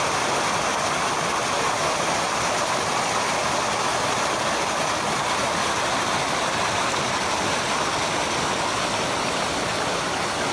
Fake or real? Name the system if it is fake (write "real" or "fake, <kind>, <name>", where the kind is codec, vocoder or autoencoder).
real